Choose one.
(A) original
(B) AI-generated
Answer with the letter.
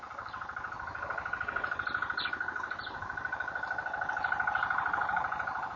B